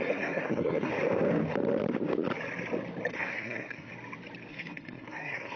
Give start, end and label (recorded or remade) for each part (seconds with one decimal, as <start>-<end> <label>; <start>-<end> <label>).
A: 0.0-0.9 remade; 0.9-3.1 recorded; 3.1-3.9 remade; 3.9-4.5 recorded; 4.5-5.6 remade